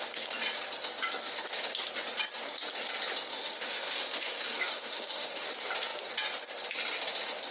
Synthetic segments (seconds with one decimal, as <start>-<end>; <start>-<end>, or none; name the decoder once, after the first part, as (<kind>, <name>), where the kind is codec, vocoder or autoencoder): 3.3-5.5 (autoencoder, DAC-VAE)

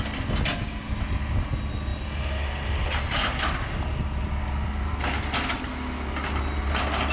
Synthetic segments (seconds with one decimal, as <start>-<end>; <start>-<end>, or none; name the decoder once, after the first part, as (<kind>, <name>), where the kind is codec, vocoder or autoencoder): none

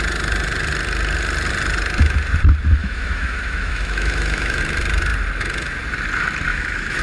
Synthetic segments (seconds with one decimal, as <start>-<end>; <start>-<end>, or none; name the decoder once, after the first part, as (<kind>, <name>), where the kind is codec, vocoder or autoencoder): 2.8-4.6 (autoencoder, DAC-VAE); 6.5-7.0

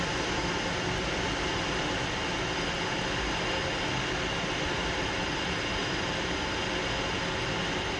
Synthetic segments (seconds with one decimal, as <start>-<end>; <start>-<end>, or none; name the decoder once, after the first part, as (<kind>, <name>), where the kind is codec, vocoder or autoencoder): none

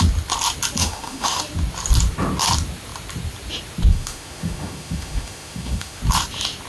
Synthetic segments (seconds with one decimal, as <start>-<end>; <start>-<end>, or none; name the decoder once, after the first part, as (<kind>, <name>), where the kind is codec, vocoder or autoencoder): 0.8-1.4 (autoencoder, DAC-VAE); 3.9-6.0

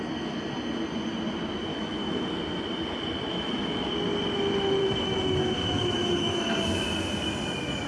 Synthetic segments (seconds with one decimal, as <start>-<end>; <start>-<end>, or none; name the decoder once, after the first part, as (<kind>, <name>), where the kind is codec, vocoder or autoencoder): 1.7-2.4 (autoencoder, DAC-VAE); 3.3-3.9; 4.8-6.4

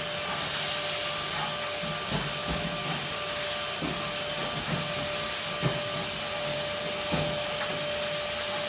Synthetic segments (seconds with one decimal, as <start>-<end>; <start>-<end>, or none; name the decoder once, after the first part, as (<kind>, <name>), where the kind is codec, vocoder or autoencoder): 2.4-2.9 (autoencoder, DAC-VAE)

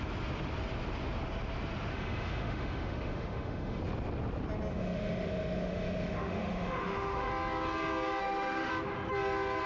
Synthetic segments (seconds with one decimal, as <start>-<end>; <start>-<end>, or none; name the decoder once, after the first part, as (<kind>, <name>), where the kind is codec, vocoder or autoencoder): 1.9-3.8 (autoencoder, DAC-VAE); 4.7-7.3; 8.2-8.7